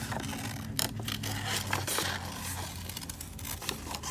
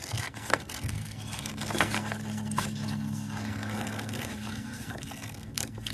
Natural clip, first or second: first